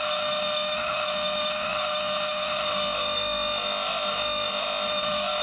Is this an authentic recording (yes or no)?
no